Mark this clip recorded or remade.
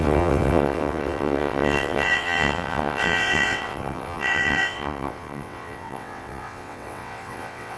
remade